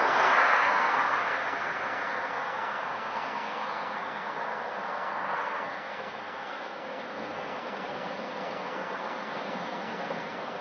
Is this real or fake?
fake